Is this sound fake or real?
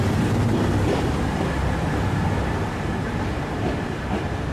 fake